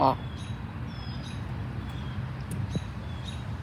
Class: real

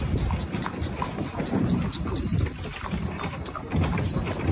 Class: real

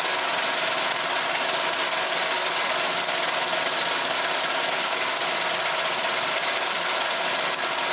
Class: real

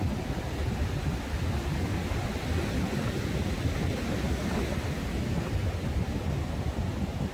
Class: real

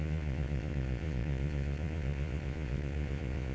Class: fake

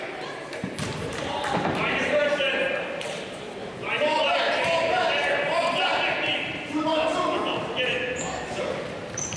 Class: fake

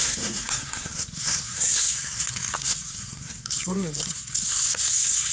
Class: fake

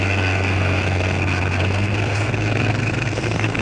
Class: fake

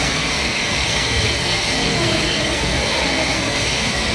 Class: fake